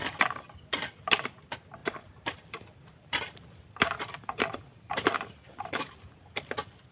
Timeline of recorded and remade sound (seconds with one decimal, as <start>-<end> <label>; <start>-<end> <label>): 0.0-1.8 recorded; 1.8-5.9 remade; 5.9-6.9 recorded